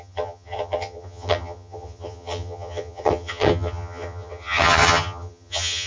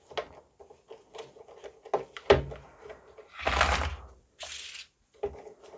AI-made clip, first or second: first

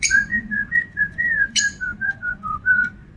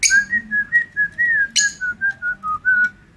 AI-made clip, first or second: first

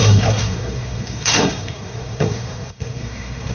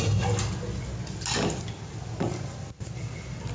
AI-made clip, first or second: first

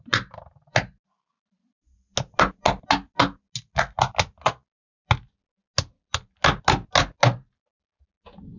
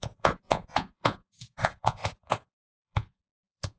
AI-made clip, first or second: second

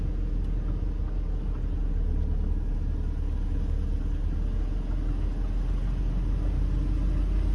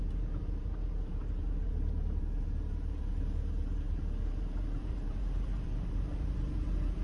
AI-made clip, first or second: second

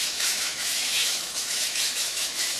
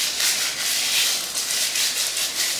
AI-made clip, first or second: first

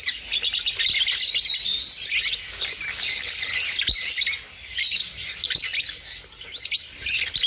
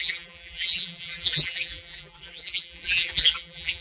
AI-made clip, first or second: second